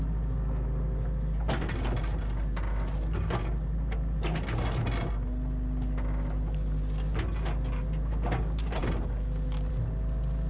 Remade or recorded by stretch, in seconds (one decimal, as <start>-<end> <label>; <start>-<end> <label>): 0.0-10.5 recorded